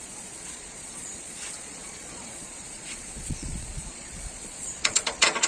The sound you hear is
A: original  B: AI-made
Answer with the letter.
B